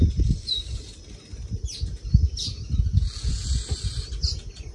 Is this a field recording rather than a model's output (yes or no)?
yes